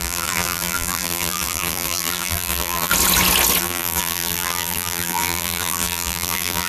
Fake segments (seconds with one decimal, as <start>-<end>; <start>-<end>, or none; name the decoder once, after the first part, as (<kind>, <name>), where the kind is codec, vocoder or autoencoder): 0.0-2.9 (vocoder, BigVGAN v2); 3.6-6.7